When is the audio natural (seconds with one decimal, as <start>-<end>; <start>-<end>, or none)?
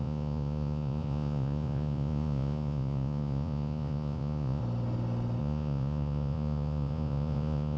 4.6-5.4